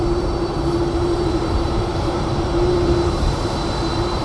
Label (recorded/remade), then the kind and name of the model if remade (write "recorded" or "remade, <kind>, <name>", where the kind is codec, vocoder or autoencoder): remade, vocoder, BigVGAN v2